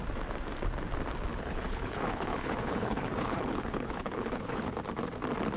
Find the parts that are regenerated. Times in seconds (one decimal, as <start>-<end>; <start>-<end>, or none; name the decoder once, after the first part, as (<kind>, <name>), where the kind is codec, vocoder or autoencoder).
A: 1.3-4.7 (codec, HILCodec)